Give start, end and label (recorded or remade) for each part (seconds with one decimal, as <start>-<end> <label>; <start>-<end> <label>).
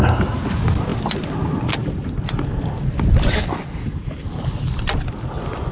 0.0-5.7 recorded